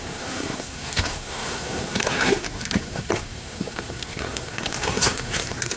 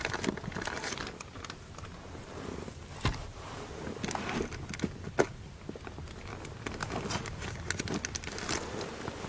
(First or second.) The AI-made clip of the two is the first